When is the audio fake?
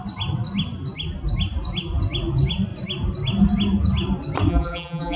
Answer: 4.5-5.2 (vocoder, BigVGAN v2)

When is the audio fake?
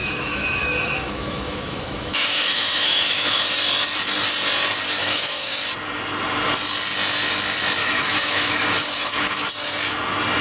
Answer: 0.0-3.5 (autoencoder, DAC-VAE); 5.0-5.7; 7.8-9.5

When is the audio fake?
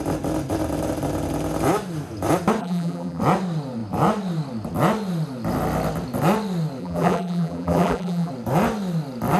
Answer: 2.6-3.2 (vocoder, BigVGAN v2); 6.8-8.3